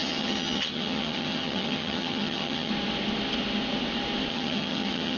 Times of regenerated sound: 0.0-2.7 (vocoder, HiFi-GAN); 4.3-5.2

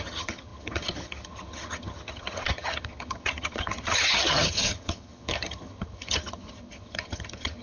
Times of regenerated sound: 0.0-7.6 (vocoder, HiFi-GAN)

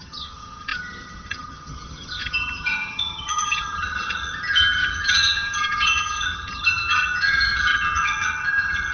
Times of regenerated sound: 0.0-8.9 (vocoder, HiFi-GAN)

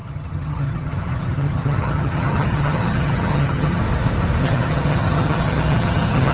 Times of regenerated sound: 0.0-3.8 (vocoder, HiFi-GAN); 4.4-6.3

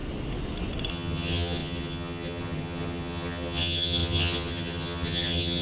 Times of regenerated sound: 0.9-5.6 (vocoder, HiFi-GAN)

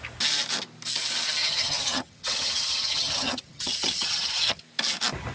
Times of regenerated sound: 1.4-4.6 (vocoder, HiFi-GAN)

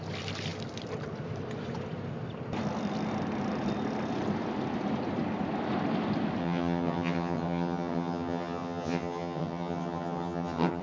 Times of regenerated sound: 6.4-10.8 (vocoder, HiFi-GAN)

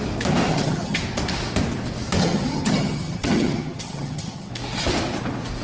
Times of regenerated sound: 0.5-1.0 (vocoder, HiFi-GAN); 2.2-4.5